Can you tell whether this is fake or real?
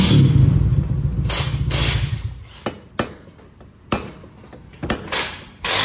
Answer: real